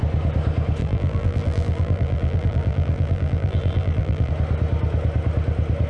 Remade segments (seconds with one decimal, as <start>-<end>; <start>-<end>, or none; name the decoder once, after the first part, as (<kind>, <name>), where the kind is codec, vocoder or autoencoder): 0.8-4.3 (vocoder, BigVGAN v2)